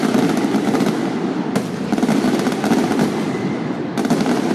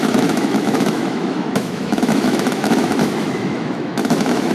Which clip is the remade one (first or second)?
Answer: second